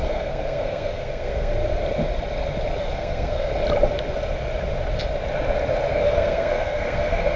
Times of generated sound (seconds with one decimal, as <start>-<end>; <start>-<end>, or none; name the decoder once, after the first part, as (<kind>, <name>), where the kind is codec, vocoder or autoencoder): 0.0-1.5 (codec, SNAC); 2.8-3.5; 5.9-7.4